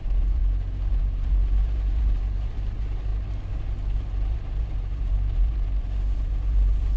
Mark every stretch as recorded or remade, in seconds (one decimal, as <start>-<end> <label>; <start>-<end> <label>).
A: 0.0-0.4 remade; 0.4-0.9 recorded; 0.9-3.1 remade; 3.1-4.0 recorded; 4.0-7.0 remade